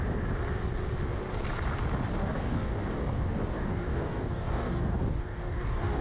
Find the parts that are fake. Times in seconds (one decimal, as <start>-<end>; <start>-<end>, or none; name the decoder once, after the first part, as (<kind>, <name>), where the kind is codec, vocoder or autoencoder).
2.2-6.0 (codec, DAC)